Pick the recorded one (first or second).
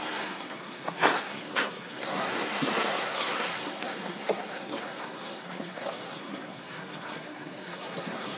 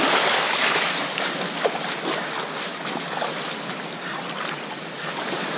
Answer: second